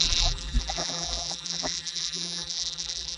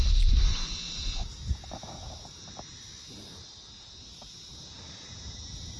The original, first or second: second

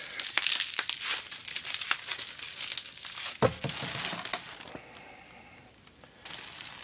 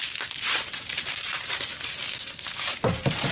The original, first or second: first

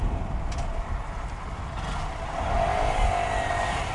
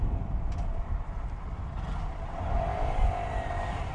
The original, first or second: first